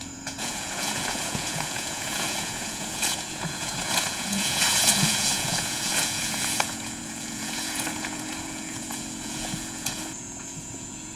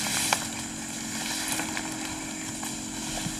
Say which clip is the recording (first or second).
second